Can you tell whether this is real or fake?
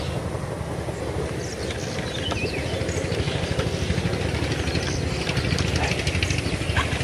real